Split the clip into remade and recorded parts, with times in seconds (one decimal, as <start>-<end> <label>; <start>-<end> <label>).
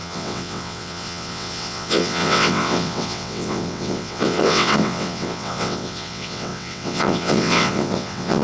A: 0.0-8.4 remade